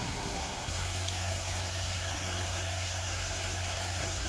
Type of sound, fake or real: fake